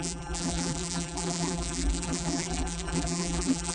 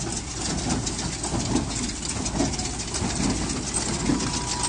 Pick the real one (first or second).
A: second